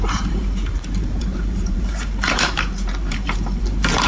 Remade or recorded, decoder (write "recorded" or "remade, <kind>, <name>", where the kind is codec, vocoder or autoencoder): remade, vocoder, BigVGAN v2